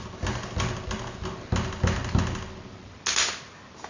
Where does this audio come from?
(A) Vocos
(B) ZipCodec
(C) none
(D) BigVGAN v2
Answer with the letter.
C